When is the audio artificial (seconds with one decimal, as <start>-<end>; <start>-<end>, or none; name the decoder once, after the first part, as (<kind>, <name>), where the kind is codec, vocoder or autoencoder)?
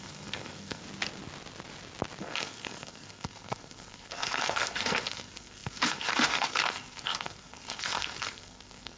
0.0-0.8 (codec, SNAC); 2.2-9.0